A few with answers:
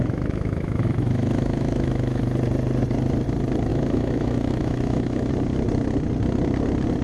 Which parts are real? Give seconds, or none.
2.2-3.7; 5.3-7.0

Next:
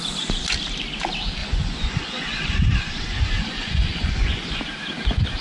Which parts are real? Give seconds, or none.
0.0-1.4; 4.6-5.4

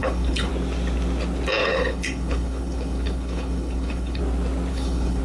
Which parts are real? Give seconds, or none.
0.5-1.6; 4.2-4.7

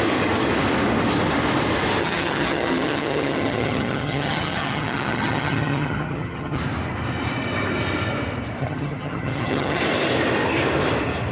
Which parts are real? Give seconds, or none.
0.0-2.0; 6.6-8.6; 9.8-11.3

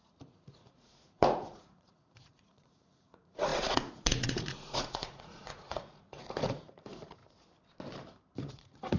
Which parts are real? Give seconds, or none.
7.2-8.5